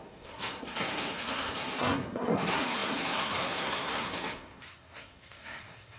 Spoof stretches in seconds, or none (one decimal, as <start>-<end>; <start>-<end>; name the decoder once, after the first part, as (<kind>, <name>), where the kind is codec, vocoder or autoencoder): 0.0-6.0 (codec, SNAC)